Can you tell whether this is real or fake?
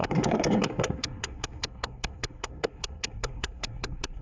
fake